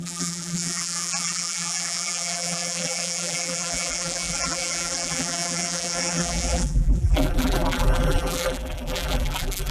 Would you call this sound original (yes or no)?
no